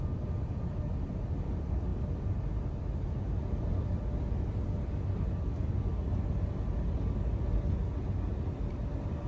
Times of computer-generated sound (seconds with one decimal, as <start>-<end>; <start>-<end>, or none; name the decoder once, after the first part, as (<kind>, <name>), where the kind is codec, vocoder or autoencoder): none